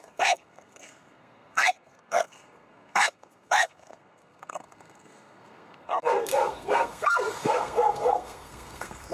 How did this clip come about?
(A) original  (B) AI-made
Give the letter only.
B